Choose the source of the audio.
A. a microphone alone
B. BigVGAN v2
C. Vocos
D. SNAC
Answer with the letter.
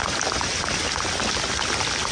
A